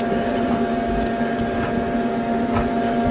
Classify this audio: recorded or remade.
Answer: recorded